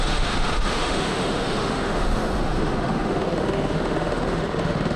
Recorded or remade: remade